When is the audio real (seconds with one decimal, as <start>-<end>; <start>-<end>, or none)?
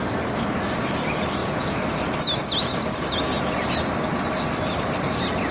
0.0-5.5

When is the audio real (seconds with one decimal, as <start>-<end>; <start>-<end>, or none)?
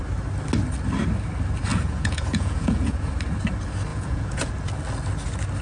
0.0-1.7; 3.1-3.9; 4.5-5.6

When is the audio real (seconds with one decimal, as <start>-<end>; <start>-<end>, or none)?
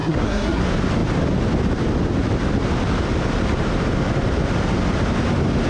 0.6-5.7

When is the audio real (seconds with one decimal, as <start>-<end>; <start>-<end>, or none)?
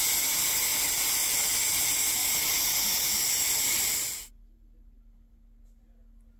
0.0-6.4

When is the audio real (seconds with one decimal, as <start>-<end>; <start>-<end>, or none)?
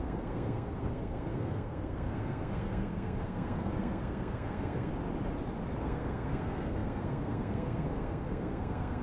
4.9-5.8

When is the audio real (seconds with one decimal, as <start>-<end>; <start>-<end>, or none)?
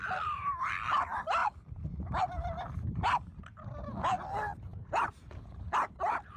0.0-1.4; 2.2-6.4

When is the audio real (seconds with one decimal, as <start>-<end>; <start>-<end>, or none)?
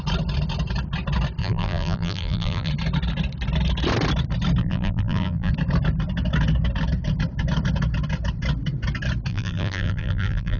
0.0-1.4; 2.7-4.6; 5.5-9.3